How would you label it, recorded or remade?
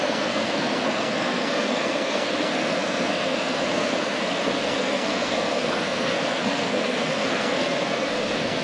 remade